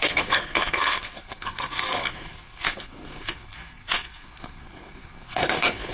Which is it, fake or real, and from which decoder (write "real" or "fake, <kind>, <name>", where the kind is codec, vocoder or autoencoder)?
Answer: fake, codec, SNAC